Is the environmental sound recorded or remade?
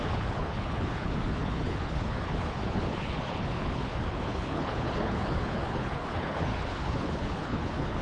remade